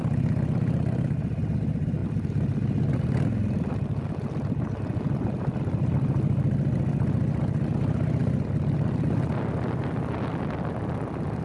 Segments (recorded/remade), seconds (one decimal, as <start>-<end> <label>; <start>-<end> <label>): 0.0-11.4 recorded